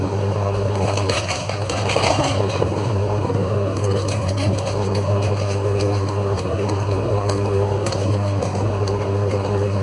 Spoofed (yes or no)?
yes